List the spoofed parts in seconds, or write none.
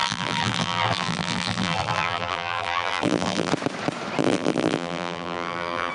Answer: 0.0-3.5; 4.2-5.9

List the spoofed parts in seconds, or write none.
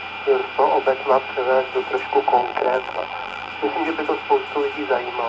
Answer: 2.4-3.5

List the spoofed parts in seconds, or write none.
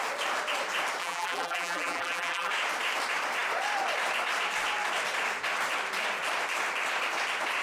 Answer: 1.0-2.5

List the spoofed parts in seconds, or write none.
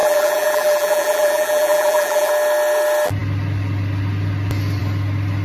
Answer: 0.0-2.3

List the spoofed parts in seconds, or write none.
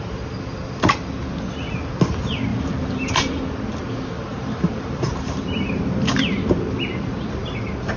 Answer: 2.5-3.4; 4.3-5.8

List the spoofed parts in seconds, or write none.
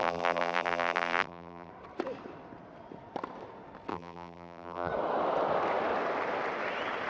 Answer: 0.0-1.7; 3.9-4.9